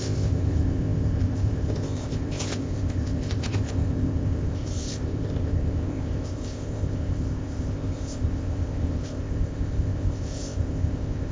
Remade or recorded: remade